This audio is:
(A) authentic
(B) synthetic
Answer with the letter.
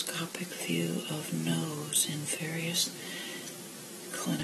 A